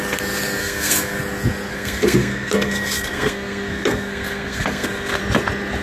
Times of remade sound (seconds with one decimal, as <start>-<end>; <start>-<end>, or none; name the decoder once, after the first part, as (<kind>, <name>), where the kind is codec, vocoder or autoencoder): 0.6-1.2 (codec, SNAC); 1.7-5.2